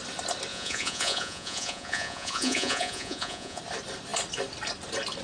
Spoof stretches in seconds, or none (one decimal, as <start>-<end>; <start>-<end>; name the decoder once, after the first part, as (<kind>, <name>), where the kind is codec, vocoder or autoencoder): 0.5-3.6 (vocoder, Vocos)